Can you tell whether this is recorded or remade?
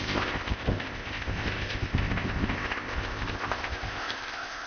remade